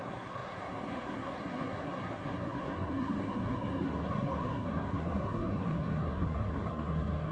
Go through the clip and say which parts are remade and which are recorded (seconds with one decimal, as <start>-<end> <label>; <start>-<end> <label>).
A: 0.0-7.3 remade